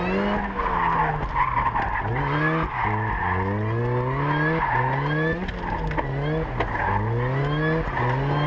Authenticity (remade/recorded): recorded